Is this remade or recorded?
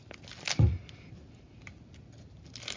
recorded